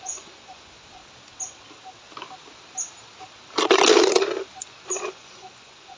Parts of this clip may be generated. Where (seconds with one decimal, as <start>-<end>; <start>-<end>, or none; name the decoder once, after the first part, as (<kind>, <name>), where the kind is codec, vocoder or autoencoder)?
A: 0.0-1.0 (vocoder, Vocos); 4.6-6.0